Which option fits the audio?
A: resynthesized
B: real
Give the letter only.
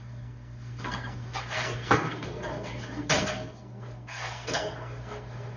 A